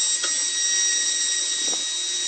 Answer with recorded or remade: recorded